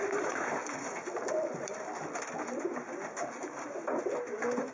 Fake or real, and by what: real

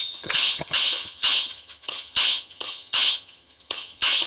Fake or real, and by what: fake, vocoder, HiFi-GAN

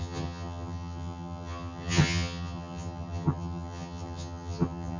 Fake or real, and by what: fake, vocoder, HiFi-GAN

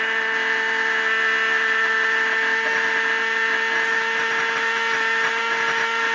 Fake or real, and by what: real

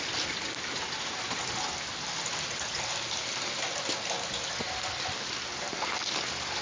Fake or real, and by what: real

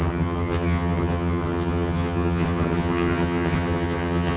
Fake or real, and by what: fake, vocoder, HiFi-GAN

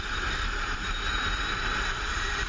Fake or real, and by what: real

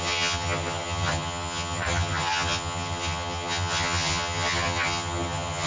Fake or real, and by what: fake, vocoder, HiFi-GAN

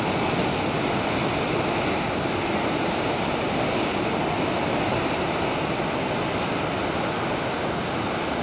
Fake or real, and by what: real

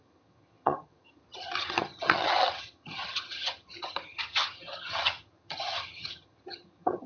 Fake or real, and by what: fake, vocoder, HiFi-GAN